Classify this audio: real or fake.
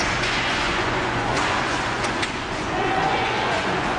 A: fake